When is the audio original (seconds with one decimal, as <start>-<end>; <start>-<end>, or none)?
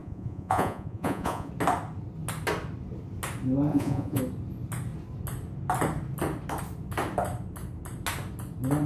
1.5-3.7; 4.2-8.9